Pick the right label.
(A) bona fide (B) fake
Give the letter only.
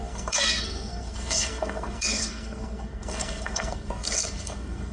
B